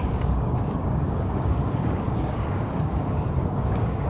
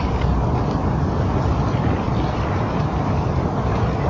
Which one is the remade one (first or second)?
first